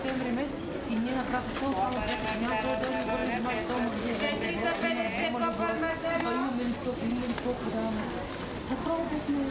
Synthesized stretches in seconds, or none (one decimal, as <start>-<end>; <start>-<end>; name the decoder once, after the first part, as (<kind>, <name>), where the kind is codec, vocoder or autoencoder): none